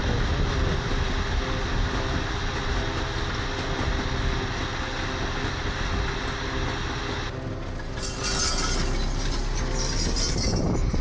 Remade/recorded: recorded